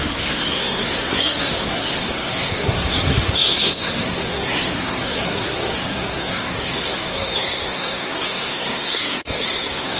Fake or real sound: fake